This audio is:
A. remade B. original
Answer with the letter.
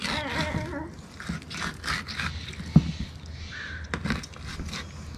B